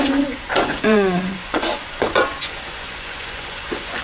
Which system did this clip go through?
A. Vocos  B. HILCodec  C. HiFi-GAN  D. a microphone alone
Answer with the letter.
A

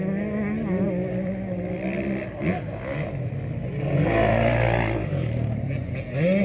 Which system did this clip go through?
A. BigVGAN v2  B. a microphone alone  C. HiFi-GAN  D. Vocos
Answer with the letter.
B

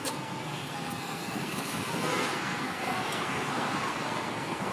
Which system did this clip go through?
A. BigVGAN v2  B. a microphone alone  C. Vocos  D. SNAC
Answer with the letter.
D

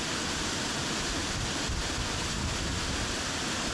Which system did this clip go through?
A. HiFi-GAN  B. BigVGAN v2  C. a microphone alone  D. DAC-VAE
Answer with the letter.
C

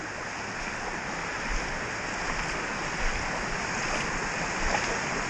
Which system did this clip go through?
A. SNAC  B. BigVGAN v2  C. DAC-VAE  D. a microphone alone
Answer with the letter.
D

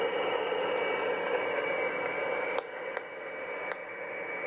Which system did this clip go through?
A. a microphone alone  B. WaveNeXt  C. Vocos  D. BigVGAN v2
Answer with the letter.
A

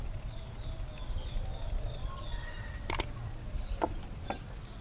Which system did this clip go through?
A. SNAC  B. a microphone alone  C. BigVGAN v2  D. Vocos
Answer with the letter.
B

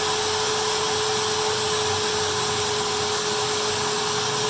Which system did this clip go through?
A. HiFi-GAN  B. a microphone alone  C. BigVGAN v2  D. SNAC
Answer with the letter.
B